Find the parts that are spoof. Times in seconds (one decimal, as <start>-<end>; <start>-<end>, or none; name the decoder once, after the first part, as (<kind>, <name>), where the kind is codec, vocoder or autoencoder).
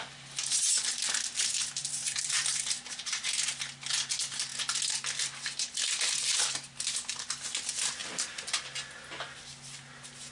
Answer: 1.8-3.4 (vocoder, BigVGAN v2)